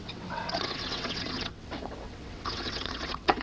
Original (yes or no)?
no